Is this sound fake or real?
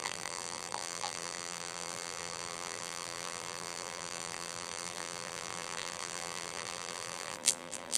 fake